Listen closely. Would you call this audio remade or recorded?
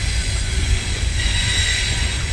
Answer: remade